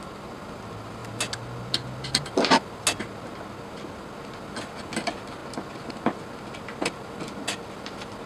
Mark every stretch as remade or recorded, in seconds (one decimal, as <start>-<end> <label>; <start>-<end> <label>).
0.0-8.3 recorded